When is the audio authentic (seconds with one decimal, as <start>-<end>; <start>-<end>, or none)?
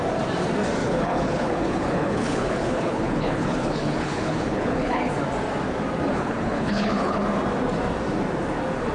0.0-0.8; 5.1-6.1; 7.2-8.9